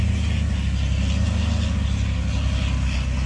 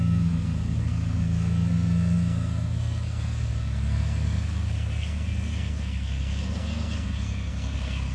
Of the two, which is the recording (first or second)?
first